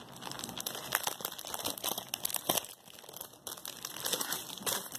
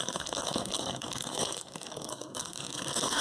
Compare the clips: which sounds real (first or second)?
first